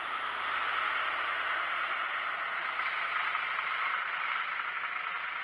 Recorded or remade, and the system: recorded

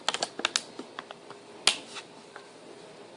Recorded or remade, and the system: recorded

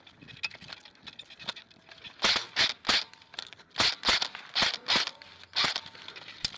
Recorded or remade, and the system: recorded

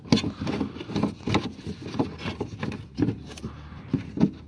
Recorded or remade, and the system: recorded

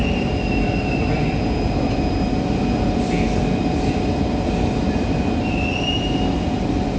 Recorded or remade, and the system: remade, vocoder, BigVGAN v2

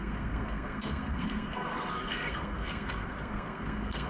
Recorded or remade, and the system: remade, codec, SNAC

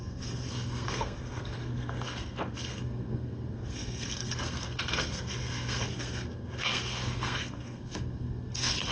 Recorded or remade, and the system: remade, codec, SNAC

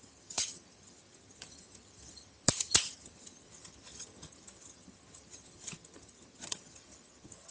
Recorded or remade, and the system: remade, vocoder, HiFi-GAN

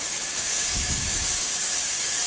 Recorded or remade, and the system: remade, codec, DAC